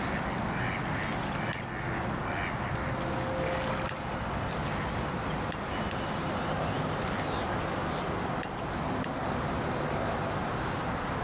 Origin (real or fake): real